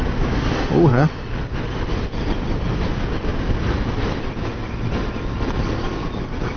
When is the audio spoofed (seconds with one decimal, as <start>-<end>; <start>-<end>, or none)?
0.0-0.9; 2.0-3.3; 4.0-4.6; 5.2-6.6